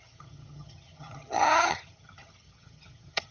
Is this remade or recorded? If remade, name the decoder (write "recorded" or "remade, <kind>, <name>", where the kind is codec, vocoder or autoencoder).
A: remade, vocoder, HiFi-GAN